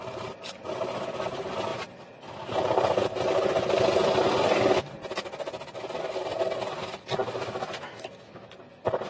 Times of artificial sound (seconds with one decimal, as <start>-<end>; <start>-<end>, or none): 7.2-8.5